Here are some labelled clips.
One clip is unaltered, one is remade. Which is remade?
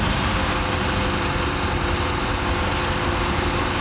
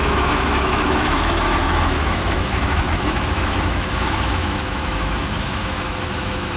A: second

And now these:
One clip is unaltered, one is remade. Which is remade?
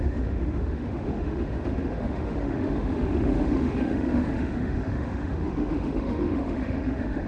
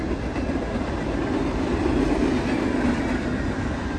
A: first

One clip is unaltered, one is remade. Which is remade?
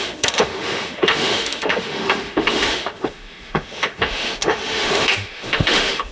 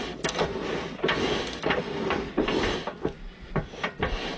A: first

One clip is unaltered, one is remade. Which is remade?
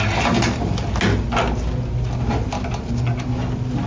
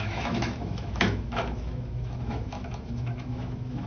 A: second